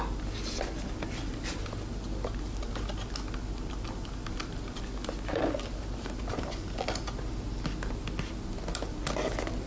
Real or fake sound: real